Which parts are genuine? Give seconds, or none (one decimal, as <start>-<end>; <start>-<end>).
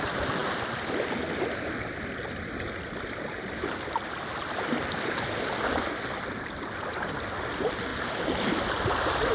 0.0-9.3